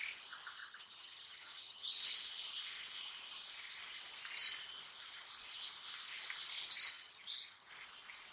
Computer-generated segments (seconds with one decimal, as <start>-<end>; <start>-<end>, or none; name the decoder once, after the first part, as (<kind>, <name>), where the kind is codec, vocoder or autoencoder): 0.6-2.0 (vocoder, HiFi-GAN); 6.9-7.7